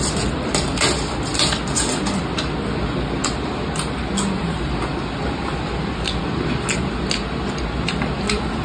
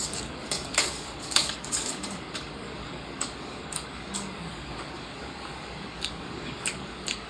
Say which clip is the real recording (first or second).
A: first